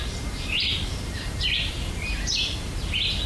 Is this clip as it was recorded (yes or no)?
yes